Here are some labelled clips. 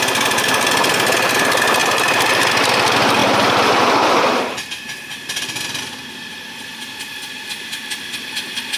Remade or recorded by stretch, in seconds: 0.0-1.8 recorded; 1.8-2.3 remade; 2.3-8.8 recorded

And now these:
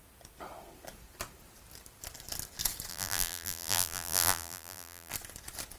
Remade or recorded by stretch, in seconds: 0.0-2.9 recorded; 2.9-5.1 remade; 5.1-5.8 recorded

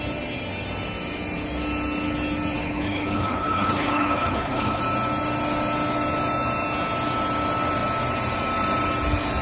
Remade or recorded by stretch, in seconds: 0.0-2.6 recorded; 2.6-4.8 remade; 4.8-9.4 recorded

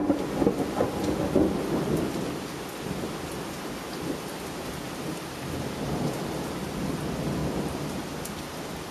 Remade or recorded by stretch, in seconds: 0.0-7.4 recorded; 7.4-8.9 remade

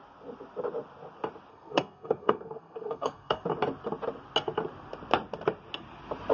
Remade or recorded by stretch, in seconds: 0.0-1.5 recorded; 1.5-3.4 remade; 3.4-6.3 recorded

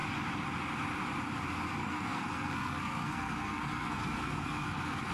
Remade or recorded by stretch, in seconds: 0.0-1.8 recorded; 1.8-5.1 remade

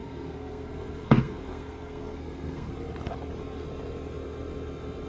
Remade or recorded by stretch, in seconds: 0.0-2.7 remade; 2.7-5.1 recorded

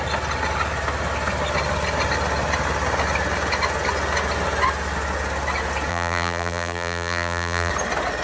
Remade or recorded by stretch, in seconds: 0.0-5.9 recorded; 5.9-7.7 remade; 7.7-8.2 recorded